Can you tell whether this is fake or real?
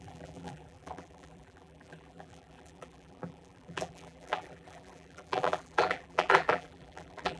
fake